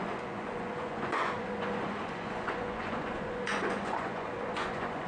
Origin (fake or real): fake